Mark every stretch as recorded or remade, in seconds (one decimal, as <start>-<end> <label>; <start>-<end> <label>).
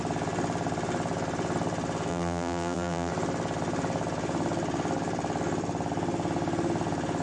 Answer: 0.0-2.1 recorded; 2.1-3.1 remade; 3.1-7.2 recorded